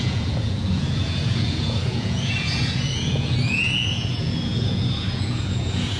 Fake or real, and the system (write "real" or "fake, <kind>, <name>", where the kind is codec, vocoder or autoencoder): fake, vocoder, Vocos